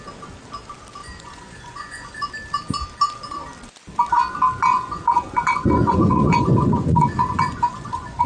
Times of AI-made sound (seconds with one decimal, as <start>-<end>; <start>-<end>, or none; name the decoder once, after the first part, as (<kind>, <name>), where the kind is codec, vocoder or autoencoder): 1.0-2.3 (vocoder, Vocos); 4.7-8.3